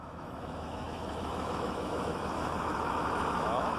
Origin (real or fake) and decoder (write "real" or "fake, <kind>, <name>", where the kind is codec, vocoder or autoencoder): fake, autoencoder, DAC-VAE